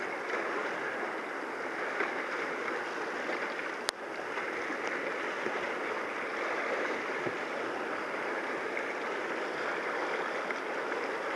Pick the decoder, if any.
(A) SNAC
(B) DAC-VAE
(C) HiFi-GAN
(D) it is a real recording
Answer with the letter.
D